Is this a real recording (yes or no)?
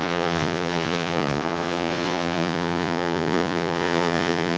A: no